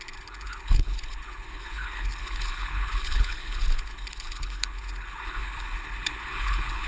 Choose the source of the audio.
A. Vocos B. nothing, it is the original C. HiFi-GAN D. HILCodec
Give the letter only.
D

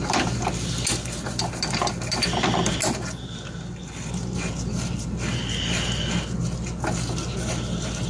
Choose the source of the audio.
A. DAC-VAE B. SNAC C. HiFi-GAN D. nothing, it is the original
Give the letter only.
D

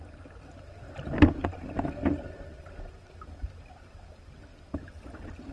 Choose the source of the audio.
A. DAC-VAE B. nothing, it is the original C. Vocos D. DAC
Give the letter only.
B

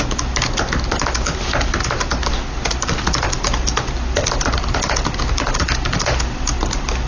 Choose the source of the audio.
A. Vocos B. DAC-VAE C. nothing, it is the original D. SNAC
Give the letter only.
C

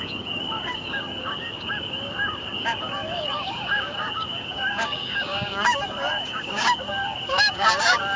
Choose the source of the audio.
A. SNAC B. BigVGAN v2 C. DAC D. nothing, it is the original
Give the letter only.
C